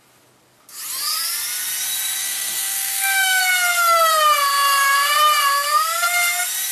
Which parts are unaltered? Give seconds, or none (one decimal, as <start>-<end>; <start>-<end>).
0.0-2.2; 3.4-6.7